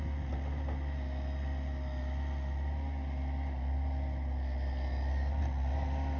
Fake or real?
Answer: real